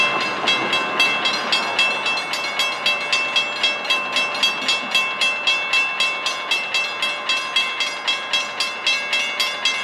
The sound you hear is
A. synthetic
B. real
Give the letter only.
B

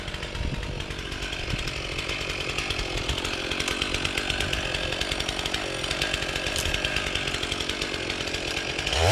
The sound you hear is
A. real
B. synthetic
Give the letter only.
A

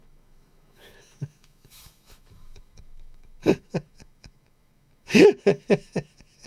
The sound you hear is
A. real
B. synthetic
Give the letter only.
B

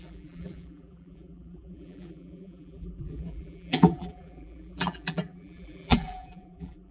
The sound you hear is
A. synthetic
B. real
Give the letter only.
A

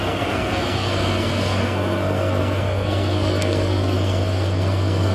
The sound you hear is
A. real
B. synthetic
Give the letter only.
B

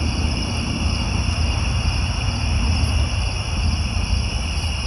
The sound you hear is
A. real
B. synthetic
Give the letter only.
A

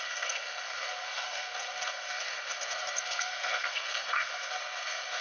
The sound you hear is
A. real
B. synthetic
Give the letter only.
B